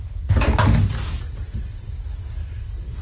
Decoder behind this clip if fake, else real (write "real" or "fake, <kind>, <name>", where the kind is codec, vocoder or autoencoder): fake, vocoder, BigVGAN v2